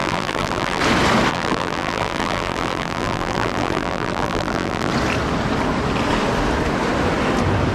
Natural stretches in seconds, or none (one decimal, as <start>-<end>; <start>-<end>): 0.8-1.3; 4.9-7.7